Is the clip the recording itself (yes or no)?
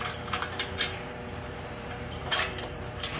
no